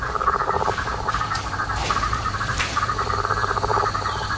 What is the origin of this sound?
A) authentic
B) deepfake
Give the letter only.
B